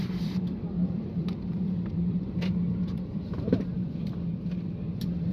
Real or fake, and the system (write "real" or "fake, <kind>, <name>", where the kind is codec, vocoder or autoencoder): fake, vocoder, BigVGAN v2